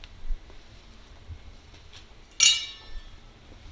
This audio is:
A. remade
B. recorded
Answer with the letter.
B